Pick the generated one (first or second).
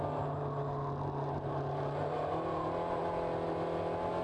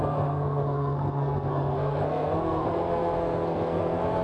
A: second